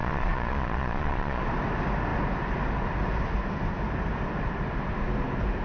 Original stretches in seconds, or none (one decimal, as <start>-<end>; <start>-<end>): 1.4-5.6